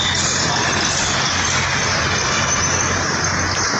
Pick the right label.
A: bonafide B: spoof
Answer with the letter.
A